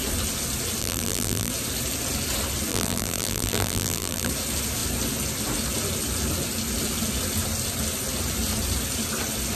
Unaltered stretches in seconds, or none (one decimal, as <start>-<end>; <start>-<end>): 0.0-0.8; 1.5-2.7; 4.3-9.6